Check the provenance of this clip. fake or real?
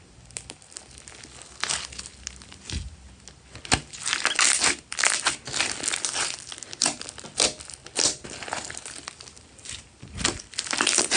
real